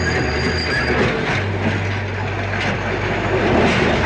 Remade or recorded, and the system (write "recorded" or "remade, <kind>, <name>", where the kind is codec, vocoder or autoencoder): recorded